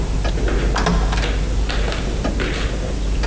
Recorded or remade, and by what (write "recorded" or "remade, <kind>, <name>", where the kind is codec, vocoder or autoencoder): recorded